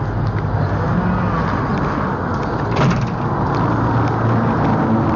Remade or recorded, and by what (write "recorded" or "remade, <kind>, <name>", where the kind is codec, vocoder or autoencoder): recorded